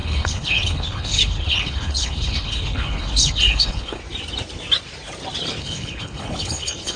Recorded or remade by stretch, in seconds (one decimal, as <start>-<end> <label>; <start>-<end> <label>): 0.0-4.0 remade; 4.0-5.6 recorded; 5.6-7.0 remade

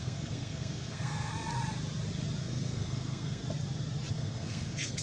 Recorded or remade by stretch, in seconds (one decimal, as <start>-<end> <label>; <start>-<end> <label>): 0.0-1.3 remade; 1.3-2.4 recorded; 2.4-3.4 remade; 3.4-4.1 recorded; 4.1-5.0 remade